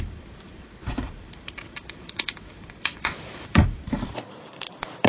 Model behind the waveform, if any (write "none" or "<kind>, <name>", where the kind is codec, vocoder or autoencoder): vocoder, BigVGAN v2